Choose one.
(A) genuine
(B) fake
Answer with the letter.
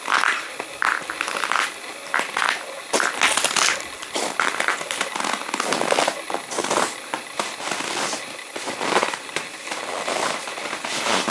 A